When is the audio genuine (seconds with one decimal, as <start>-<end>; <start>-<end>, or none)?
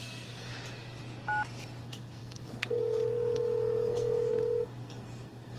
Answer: 0.5-1.8